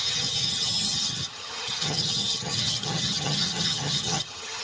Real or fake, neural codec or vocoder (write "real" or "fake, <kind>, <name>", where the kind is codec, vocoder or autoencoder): fake, vocoder, HiFi-GAN